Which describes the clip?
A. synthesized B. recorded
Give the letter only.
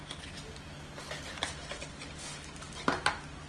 B